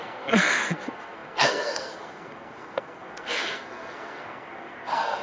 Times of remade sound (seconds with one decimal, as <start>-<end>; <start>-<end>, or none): 0.0-5.2